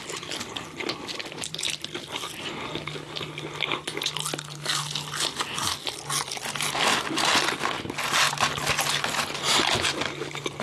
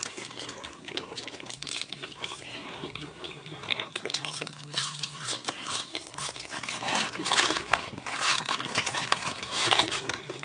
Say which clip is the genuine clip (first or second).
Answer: first